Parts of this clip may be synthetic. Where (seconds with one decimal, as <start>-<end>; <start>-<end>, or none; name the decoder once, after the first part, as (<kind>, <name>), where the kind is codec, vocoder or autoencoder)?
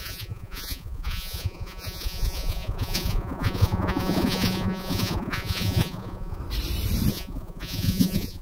0.0-6.4 (vocoder, Vocos); 7.1-8.4